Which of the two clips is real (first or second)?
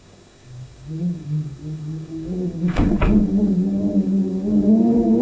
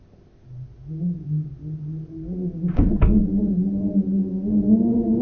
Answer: second